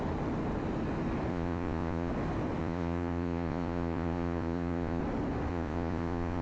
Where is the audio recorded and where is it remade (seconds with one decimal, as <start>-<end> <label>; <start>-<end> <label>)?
0.0-1.3 recorded; 1.3-2.1 remade; 2.1-2.6 recorded; 2.6-5.0 remade; 5.0-5.5 recorded; 5.5-6.4 remade